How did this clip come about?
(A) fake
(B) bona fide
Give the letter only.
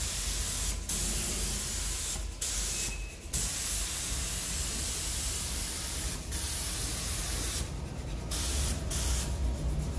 B